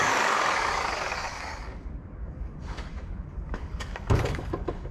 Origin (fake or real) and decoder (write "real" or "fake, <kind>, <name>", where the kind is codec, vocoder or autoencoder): fake, codec, DAC